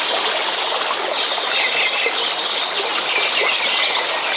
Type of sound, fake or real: real